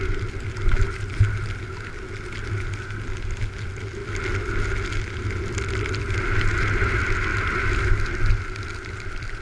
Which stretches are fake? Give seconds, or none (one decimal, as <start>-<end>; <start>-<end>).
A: 7.3-7.9

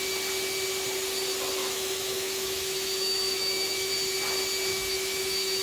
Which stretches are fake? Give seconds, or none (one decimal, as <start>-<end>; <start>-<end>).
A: 1.6-3.9; 4.7-5.6

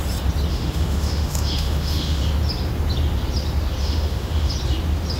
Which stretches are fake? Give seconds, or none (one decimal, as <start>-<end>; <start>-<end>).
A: 0.5-2.2; 3.8-4.5